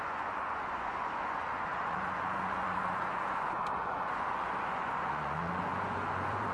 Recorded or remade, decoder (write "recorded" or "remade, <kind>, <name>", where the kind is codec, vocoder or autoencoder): remade, vocoder, Vocos